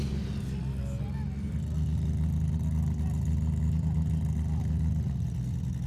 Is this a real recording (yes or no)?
yes